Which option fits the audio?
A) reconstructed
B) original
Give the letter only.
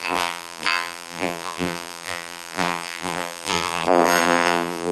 A